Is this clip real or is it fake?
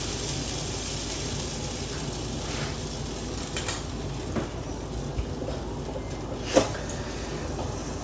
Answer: real